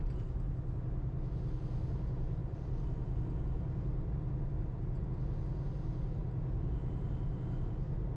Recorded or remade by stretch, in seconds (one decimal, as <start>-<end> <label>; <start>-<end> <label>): 0.0-2.4 recorded; 2.4-4.3 remade; 4.3-8.2 recorded